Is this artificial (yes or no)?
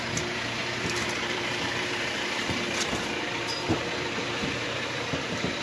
yes